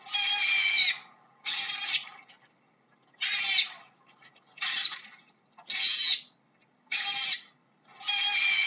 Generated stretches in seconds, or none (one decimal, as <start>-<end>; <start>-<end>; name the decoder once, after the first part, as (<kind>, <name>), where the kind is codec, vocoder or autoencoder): none